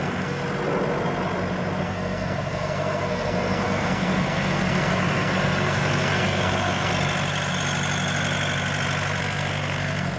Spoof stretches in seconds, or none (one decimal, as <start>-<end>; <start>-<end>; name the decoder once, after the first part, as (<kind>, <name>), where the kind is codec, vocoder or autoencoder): 0.0-0.4 (codec, SNAC); 1.8-6.9; 9.2-10.2